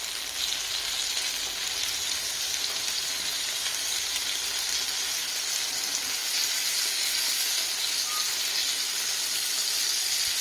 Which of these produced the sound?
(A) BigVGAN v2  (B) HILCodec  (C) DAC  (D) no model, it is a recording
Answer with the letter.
D